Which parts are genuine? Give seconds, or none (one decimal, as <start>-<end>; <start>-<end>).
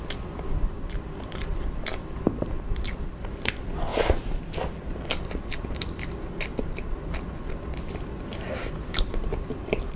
3.9-5.7